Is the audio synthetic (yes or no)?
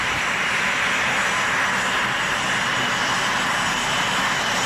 no